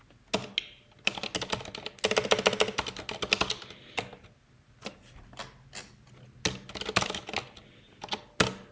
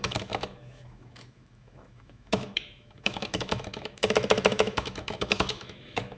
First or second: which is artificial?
second